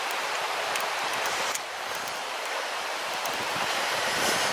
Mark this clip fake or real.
fake